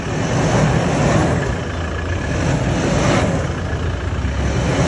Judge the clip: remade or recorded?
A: recorded